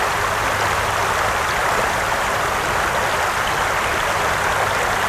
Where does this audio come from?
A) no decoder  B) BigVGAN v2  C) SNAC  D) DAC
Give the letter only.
A